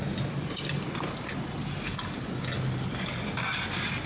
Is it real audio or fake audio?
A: real